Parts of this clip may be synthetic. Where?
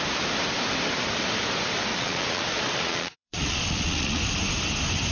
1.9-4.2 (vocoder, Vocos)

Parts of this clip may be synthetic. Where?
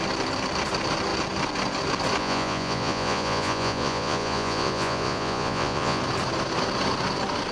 2.2-6.0 (vocoder, Vocos)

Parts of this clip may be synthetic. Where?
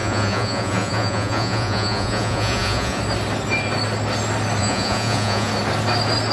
0.0-3.0 (vocoder, Vocos); 4.6-5.5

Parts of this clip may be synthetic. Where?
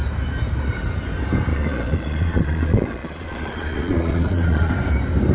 1.5-4.7 (vocoder, Vocos)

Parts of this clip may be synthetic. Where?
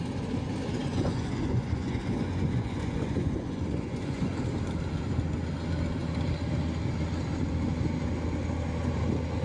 0.8-4.3 (vocoder, Vocos)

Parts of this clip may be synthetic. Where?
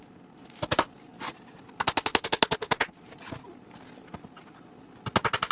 none